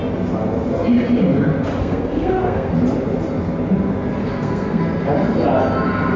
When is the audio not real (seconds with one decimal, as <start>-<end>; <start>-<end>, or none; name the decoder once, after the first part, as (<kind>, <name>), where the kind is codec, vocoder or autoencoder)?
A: 1.8-2.7 (codec, SNAC); 4.2-4.8